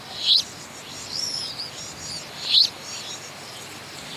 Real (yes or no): yes